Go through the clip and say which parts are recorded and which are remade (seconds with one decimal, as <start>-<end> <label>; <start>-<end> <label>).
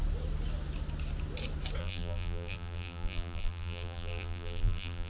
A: 0.0-1.8 recorded; 1.8-5.1 remade